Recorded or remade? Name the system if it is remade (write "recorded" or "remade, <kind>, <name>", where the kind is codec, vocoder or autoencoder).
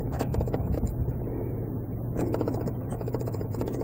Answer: remade, autoencoder, DAC-VAE